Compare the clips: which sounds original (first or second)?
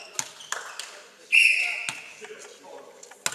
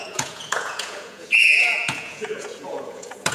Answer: first